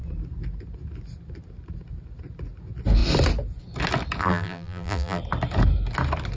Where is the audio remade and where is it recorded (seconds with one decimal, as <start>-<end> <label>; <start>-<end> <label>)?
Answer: 0.0-4.2 recorded; 4.2-5.2 remade; 5.2-6.4 recorded